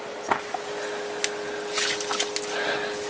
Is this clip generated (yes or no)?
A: no